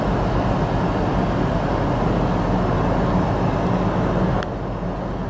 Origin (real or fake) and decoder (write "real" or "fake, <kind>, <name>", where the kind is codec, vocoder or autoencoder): real